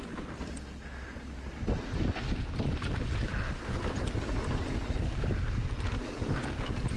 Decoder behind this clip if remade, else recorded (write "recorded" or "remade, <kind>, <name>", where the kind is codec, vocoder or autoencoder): recorded